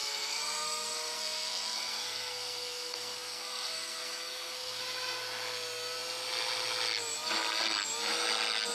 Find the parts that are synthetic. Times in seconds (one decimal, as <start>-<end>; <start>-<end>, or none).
0.0-4.8